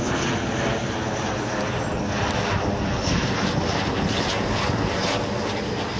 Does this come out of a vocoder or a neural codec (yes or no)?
no